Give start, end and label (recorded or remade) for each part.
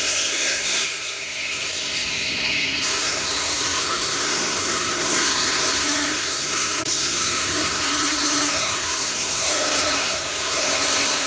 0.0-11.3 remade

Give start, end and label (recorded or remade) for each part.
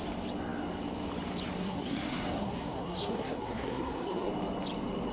0.0-1.6 recorded; 1.6-4.3 remade; 4.3-5.1 recorded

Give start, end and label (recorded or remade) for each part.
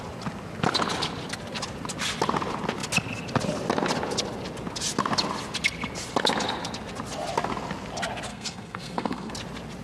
0.0-8.3 recorded; 8.3-9.3 remade; 9.3-9.8 recorded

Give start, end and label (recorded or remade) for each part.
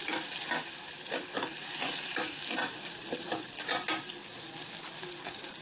0.0-5.6 recorded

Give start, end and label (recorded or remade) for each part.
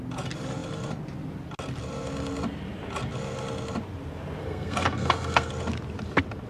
0.0-4.4 recorded; 4.4-5.5 remade; 5.5-6.5 recorded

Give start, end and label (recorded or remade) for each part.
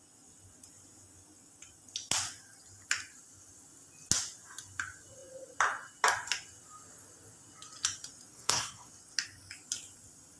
0.0-8.3 recorded; 8.3-8.9 remade; 8.9-10.4 recorded